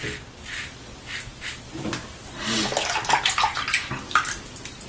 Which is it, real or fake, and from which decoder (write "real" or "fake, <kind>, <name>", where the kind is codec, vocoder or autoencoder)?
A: real